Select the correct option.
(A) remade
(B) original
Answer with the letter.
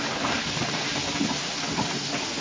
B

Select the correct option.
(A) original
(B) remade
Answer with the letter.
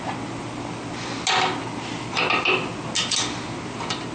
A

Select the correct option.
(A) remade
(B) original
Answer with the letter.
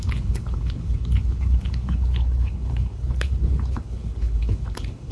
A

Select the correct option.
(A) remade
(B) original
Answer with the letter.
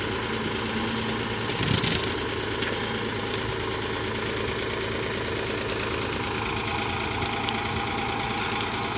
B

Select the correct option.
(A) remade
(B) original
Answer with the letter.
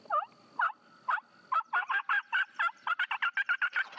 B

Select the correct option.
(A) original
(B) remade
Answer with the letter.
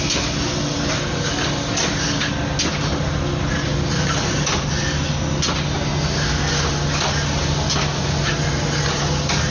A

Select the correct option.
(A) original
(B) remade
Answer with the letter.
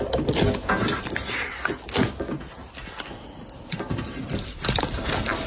A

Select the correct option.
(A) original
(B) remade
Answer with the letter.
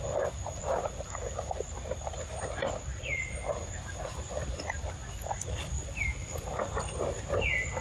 A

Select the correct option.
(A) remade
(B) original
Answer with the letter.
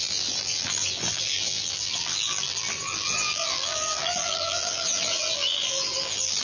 A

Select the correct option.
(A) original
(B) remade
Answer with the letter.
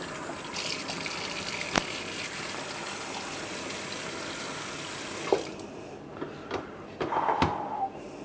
A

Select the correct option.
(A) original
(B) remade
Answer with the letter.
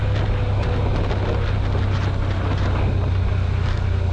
A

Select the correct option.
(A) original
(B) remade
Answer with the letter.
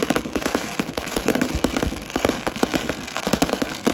B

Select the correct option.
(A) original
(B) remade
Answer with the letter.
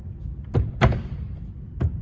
B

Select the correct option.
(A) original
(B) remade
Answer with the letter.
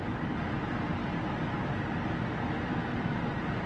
A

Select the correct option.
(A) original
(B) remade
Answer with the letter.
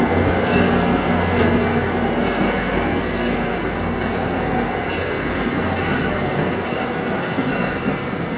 B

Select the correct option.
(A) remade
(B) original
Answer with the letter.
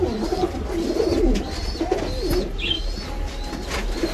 B